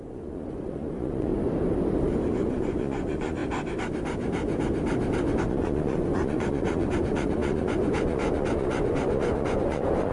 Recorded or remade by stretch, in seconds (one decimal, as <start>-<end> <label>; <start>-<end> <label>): 0.0-1.3 remade; 1.3-2.3 recorded; 2.3-3.4 remade; 3.4-5.4 recorded; 5.4-10.1 remade